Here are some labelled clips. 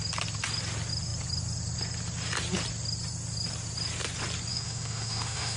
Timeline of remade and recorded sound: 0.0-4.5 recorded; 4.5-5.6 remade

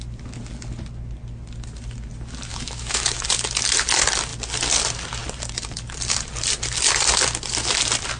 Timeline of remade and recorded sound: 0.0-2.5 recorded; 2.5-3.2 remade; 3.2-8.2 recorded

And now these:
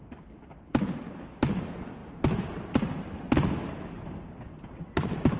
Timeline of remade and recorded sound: 0.0-5.4 recorded

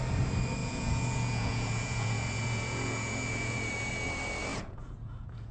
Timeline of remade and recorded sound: 0.0-0.6 recorded; 0.6-3.9 remade; 3.9-4.5 recorded; 4.5-5.5 remade